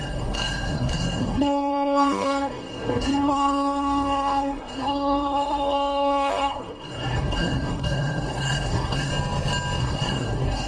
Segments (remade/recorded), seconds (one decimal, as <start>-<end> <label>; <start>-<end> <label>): 0.0-9.1 remade; 9.1-9.8 recorded; 9.8-10.7 remade